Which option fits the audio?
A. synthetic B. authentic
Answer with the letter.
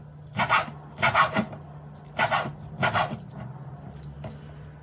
B